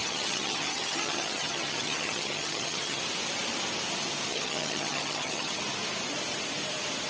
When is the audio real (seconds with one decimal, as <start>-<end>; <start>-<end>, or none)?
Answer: 3.0-4.3; 5.6-7.1